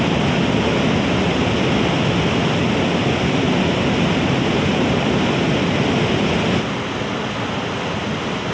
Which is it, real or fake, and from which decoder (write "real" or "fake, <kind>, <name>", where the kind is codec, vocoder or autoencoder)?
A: real